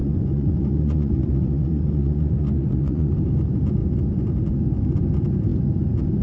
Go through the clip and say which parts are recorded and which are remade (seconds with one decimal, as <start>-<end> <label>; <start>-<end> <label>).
0.0-3.1 remade; 3.1-6.2 recorded

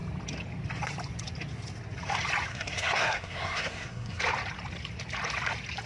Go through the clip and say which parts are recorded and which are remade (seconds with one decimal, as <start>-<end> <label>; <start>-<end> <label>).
0.0-2.5 recorded; 2.5-4.2 remade; 4.2-5.9 recorded

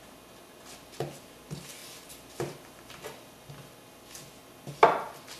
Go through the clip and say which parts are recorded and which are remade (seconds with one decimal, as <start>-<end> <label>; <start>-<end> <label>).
0.0-5.4 recorded

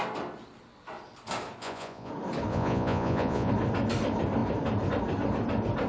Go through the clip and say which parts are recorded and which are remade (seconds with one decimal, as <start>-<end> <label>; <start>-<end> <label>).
0.0-1.6 recorded; 1.6-2.1 remade; 2.1-2.5 recorded; 2.5-3.5 remade; 3.5-5.9 recorded

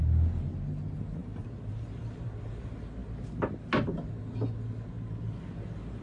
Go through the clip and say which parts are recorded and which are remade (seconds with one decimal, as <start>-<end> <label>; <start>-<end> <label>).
0.0-1.2 recorded; 1.2-2.3 remade; 2.3-6.0 recorded

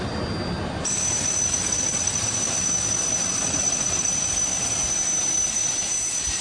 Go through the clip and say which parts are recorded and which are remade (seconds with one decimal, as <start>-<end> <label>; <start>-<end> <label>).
0.0-1.5 recorded; 1.5-2.2 remade; 2.2-3.4 recorded; 3.4-4.1 remade; 4.1-6.4 recorded